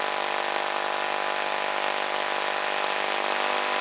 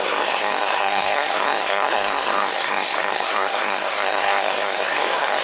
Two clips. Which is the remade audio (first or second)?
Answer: second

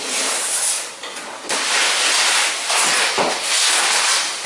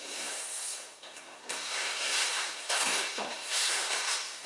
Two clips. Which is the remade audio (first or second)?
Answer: second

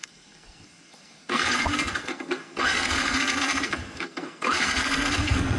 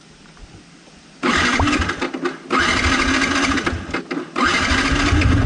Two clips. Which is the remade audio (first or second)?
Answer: first